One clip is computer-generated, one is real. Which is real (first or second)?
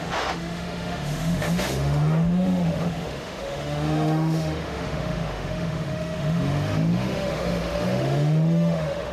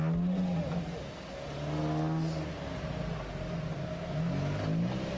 second